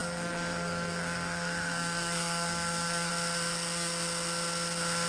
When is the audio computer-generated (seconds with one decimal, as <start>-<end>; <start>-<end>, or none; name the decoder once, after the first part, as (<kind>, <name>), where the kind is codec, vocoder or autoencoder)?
0.0-3.1 (codec, SNAC)